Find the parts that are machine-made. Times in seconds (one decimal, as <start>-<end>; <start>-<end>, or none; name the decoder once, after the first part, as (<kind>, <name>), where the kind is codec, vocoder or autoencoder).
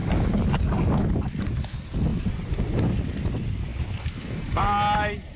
none